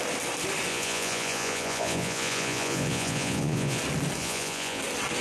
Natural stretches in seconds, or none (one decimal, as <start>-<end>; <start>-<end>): 0.0-0.7; 3.8-4.2; 4.8-5.2